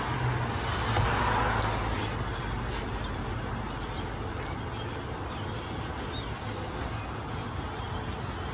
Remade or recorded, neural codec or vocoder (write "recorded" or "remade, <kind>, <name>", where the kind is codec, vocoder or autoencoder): recorded